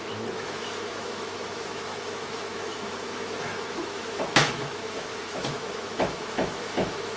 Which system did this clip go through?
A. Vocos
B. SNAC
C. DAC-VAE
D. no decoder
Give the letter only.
C